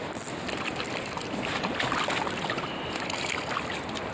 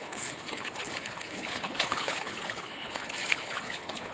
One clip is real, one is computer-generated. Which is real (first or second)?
first